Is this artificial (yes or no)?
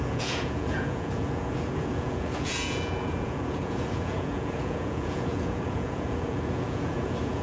yes